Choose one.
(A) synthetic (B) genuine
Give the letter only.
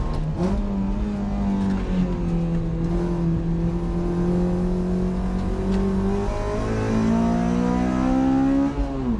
B